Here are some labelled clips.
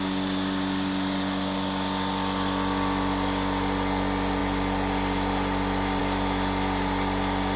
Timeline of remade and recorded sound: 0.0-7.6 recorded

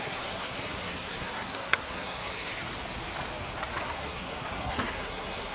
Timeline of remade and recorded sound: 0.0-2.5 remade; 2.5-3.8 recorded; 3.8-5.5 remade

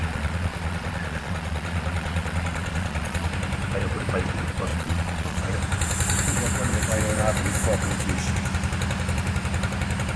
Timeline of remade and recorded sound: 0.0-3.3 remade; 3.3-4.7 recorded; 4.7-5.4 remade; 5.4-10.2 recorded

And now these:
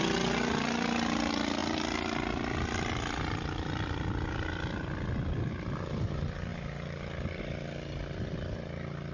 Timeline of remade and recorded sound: 0.0-9.1 recorded

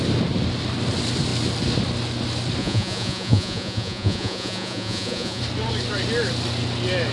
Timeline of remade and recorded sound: 0.0-2.6 recorded; 2.6-5.4 remade; 5.4-7.1 recorded